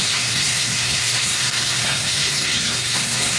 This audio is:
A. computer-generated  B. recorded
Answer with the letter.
A